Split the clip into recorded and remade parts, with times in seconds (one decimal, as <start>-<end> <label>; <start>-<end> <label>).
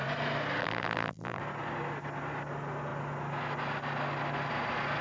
0.0-0.6 recorded; 0.6-1.4 remade; 1.4-5.0 recorded